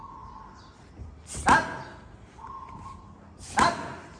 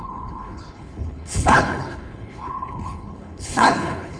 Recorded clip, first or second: first